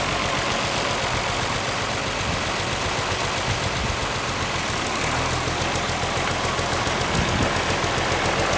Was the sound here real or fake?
real